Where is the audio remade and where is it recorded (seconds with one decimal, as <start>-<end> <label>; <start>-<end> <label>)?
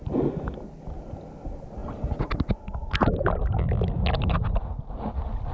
0.0-5.5 recorded